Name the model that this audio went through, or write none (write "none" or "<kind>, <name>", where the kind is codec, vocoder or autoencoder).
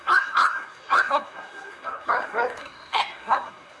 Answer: codec, SNAC